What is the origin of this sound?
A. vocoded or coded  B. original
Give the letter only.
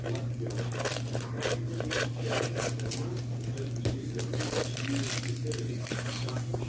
B